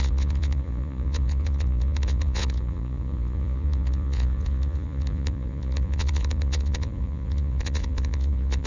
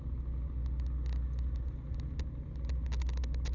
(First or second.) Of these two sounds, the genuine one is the second